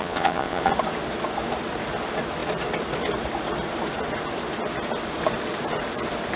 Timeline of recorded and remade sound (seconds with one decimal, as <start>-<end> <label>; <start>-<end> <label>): 0.0-0.7 remade; 0.7-6.4 recorded